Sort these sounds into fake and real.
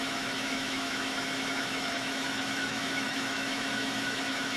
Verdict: fake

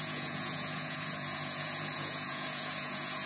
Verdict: fake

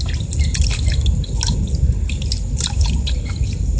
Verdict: real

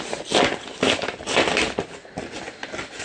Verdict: real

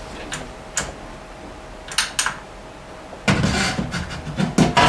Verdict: real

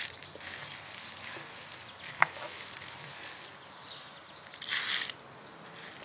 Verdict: real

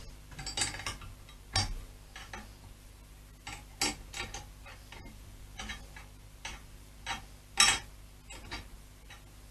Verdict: real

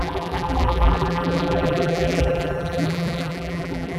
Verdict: fake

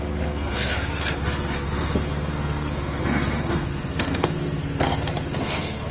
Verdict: fake